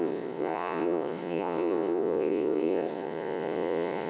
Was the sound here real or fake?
fake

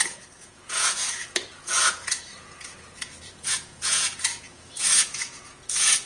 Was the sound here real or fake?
fake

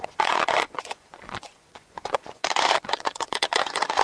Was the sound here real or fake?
fake